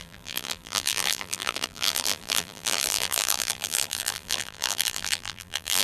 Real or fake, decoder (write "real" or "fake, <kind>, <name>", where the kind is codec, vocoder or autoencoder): fake, vocoder, BigVGAN v2